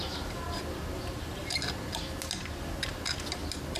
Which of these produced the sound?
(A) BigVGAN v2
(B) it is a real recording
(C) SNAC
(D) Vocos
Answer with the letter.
B